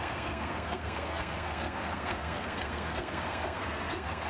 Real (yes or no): no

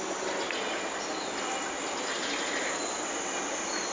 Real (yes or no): yes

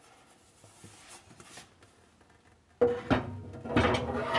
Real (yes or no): yes